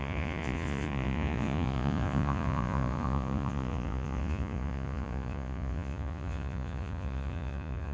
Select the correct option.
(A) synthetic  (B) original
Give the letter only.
A